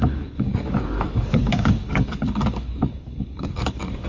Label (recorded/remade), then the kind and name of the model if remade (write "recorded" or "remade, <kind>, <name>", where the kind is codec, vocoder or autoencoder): remade, codec, DAC